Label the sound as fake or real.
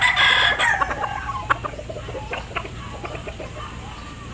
real